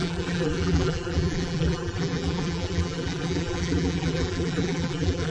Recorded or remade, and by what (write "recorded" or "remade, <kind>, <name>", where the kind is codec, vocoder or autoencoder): remade, vocoder, BigVGAN v2